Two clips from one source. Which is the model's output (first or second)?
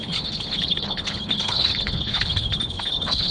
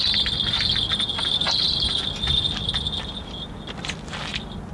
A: first